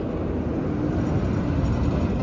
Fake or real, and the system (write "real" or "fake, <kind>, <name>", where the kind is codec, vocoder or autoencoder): real